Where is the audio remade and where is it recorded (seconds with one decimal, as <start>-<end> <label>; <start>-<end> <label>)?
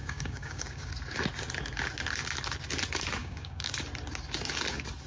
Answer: 0.0-0.9 remade; 0.9-3.2 recorded; 3.2-3.7 remade; 3.7-5.1 recorded